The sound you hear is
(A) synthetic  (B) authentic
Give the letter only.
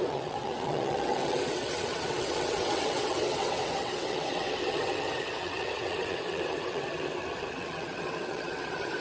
A